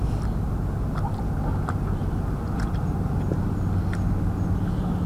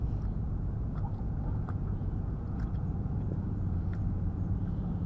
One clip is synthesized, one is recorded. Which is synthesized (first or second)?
second